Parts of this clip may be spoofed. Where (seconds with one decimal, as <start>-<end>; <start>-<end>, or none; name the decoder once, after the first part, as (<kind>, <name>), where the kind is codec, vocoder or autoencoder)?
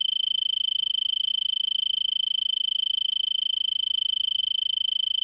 none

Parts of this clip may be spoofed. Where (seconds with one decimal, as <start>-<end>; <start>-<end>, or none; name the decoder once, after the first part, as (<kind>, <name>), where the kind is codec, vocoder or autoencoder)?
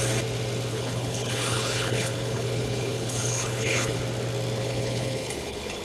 0.7-4.0 (codec, HILCodec); 4.6-5.8